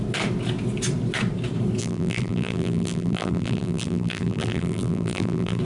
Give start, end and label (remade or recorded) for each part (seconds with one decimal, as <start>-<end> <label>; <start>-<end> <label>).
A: 0.0-1.8 recorded; 1.8-5.6 remade